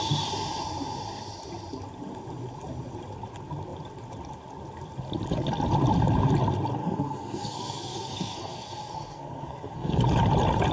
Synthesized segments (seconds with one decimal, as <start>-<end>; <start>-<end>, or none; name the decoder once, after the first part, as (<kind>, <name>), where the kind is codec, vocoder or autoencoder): 6.8-10.0 (codec, SNAC)